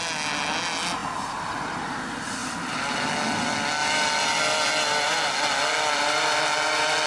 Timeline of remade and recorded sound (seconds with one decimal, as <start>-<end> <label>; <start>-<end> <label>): 0.0-2.4 recorded; 2.4-3.1 remade; 3.1-3.8 recorded; 3.8-4.7 remade; 4.7-7.1 recorded